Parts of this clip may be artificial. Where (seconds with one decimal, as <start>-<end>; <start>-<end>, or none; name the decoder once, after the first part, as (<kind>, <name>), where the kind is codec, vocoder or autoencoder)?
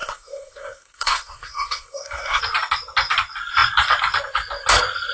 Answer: 0.0-2.4 (codec, SNAC)